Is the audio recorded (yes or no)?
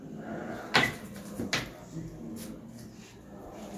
yes